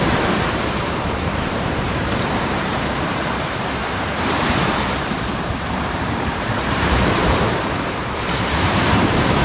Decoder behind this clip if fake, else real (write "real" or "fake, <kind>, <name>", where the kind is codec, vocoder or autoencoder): fake, vocoder, BigVGAN v2